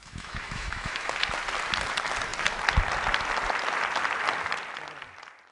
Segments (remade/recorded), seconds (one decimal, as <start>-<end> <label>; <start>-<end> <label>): 0.0-1.1 remade; 1.1-5.5 recorded

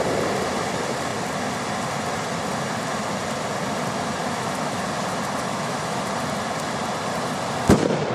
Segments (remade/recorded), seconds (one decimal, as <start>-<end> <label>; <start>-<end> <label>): 0.0-4.2 recorded; 4.2-4.8 remade; 4.8-5.5 recorded; 5.5-6.0 remade; 6.0-8.1 recorded

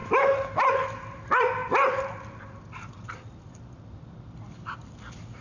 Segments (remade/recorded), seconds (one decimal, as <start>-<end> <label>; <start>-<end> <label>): 0.0-0.7 remade; 0.7-5.4 recorded

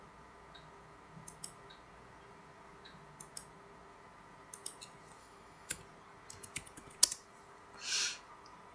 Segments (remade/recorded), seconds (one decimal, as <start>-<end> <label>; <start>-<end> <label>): 0.0-5.2 recorded; 5.2-5.8 remade; 5.8-8.7 recorded

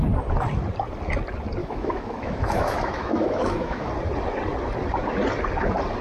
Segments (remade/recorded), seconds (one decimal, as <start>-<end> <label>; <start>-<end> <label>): 0.0-1.6 recorded; 1.6-3.9 remade; 3.9-6.0 recorded

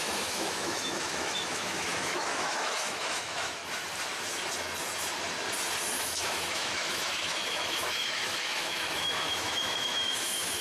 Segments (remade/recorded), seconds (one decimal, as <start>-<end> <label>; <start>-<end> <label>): 0.0-3.6 remade; 3.6-6.0 recorded; 6.0-10.6 remade

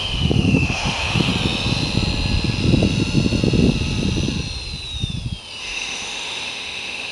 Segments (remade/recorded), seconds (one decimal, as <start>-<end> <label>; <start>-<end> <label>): 0.0-1.3 remade; 1.3-5.6 recorded; 5.6-7.1 remade

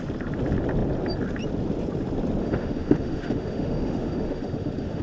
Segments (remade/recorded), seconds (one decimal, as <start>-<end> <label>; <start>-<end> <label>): 0.0-2.4 recorded; 2.4-5.0 remade